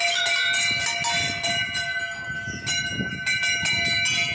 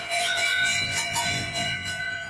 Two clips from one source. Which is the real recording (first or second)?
first